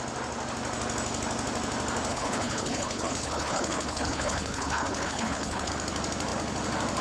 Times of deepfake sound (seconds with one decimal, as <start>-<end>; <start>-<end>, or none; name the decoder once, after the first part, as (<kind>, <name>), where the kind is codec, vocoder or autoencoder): 2.1-5.7 (codec, HILCodec)